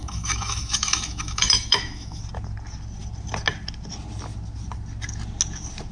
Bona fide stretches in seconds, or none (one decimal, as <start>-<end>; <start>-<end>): 2.2-5.9